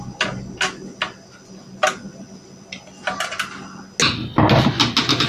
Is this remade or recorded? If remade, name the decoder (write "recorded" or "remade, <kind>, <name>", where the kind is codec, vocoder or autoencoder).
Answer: recorded